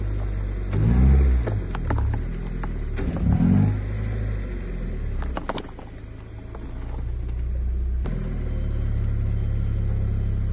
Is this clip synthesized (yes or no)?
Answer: no